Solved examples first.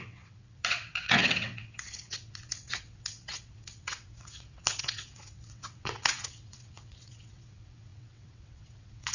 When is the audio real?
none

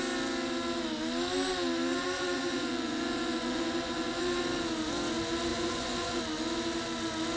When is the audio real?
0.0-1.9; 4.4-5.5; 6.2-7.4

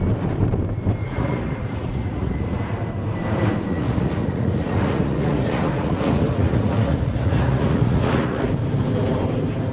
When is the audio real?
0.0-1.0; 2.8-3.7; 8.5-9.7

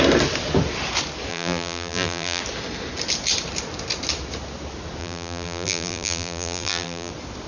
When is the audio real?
0.0-1.3; 2.4-5.0; 7.1-7.5

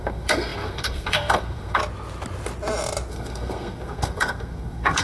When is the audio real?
1.8-3.1